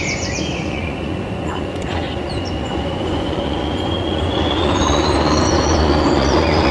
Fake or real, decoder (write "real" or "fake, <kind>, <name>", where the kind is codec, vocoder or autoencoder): fake, vocoder, Vocos